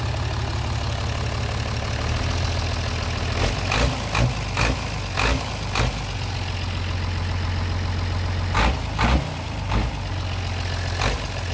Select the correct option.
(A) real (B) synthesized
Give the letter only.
A